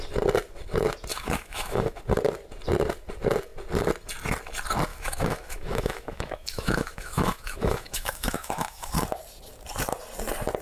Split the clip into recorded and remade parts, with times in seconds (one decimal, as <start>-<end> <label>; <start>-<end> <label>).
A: 0.0-1.1 recorded; 1.1-2.0 remade; 2.0-4.9 recorded; 4.9-8.9 remade; 8.9-10.6 recorded